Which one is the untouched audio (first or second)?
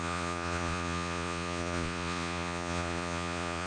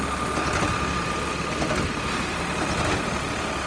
second